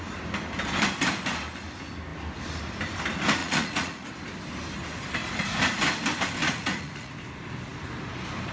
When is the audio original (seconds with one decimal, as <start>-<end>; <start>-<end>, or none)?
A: 0.0-3.4; 4.1-6.4; 7.1-8.5